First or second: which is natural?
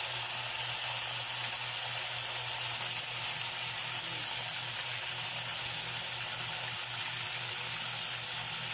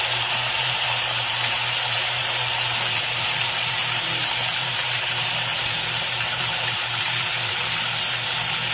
first